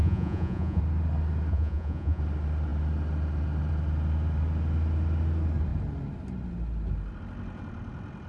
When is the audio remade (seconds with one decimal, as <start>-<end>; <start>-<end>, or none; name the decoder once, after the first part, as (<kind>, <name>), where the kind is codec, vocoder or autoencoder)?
0.0-0.8 (vocoder, Vocos); 1.5-2.2